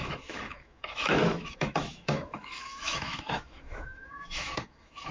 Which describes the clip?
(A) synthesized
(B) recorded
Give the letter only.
A